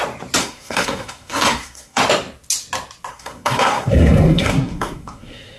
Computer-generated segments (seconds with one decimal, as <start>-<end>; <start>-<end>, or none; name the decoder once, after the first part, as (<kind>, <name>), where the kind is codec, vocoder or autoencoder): 0.4-2.0 (codec, SNAC); 3.1-5.6